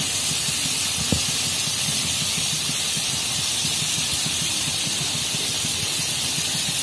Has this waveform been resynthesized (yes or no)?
no